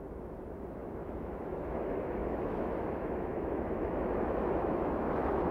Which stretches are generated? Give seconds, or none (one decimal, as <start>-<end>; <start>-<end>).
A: 0.0-5.5